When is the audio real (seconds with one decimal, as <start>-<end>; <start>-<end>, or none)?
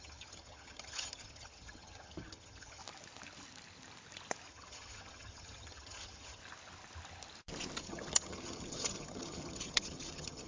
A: 2.8-4.5; 6.4-7.8